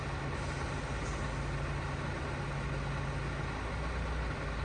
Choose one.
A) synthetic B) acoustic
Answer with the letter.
B